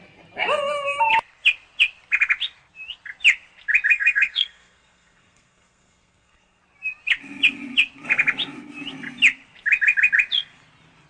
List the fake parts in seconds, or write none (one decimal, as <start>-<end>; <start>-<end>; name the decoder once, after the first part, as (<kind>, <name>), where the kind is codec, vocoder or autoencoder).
3.9-6.6 (codec, SNAC)